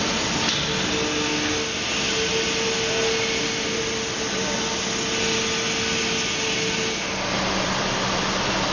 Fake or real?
real